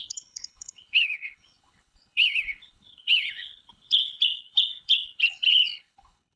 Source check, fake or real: fake